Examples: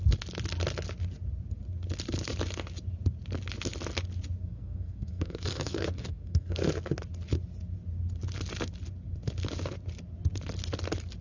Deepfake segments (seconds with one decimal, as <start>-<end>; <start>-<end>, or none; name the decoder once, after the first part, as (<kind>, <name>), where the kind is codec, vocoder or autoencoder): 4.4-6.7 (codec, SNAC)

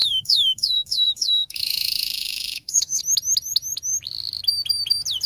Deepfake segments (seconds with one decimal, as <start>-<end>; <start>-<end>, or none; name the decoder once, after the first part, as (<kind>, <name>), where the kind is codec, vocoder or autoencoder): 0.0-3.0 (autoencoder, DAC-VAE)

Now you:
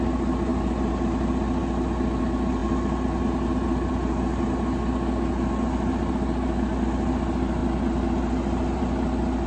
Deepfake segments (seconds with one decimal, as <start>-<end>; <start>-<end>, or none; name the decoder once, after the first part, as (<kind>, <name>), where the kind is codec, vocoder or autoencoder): none

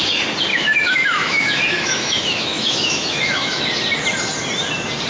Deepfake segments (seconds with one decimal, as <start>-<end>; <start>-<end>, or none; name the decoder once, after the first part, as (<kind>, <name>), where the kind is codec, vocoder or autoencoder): 0.5-3.6 (autoencoder, DAC-VAE)

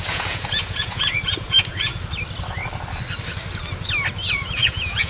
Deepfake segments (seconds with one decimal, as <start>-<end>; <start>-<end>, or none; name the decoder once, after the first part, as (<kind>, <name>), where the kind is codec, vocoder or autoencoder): 0.0-1.9 (vocoder, Vocos); 4.3-5.1

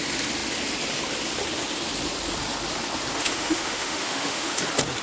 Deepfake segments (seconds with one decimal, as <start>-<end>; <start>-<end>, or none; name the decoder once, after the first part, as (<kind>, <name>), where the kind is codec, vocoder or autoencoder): 3.2-4.6 (autoencoder, DAC-VAE)

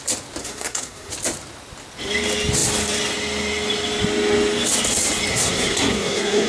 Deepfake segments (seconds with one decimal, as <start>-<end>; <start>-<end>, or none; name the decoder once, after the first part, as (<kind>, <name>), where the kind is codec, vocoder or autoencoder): 0.4-1.1 (codec, SNAC); 5.3-6.5

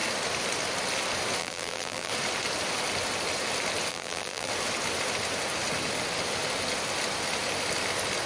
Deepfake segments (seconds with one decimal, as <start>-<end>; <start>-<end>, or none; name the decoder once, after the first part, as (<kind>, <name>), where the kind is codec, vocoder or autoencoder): 1.4-2.1 (vocoder, BigVGAN v2); 3.9-4.5